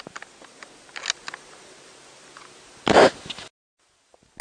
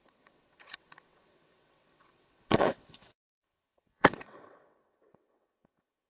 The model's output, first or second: second